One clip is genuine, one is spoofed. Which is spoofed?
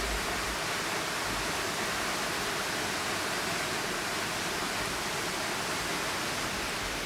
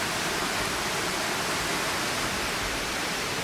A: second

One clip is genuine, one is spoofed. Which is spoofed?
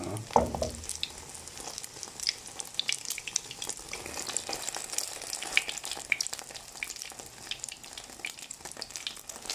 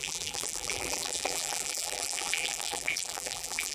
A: second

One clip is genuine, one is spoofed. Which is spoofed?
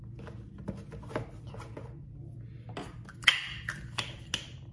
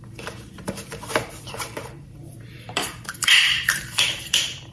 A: second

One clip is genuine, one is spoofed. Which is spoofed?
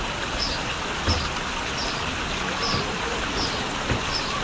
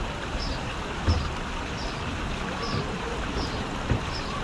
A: second